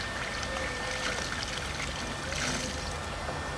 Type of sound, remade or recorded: recorded